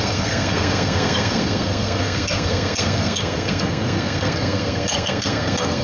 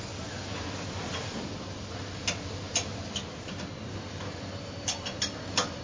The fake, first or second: first